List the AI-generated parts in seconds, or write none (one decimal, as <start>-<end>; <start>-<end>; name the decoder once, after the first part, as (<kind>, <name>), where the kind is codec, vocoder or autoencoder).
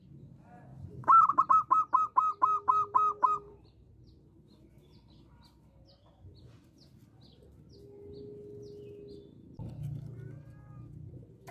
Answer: 0.7-1.3 (vocoder, BigVGAN v2); 2.9-3.9